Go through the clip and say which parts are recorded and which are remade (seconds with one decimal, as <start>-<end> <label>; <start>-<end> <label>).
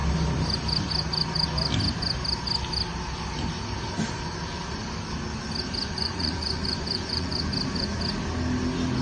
0.0-5.9 recorded; 5.9-7.4 remade; 7.4-9.0 recorded